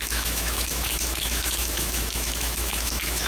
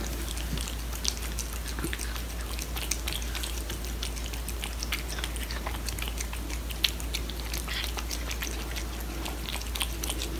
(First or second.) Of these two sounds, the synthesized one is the first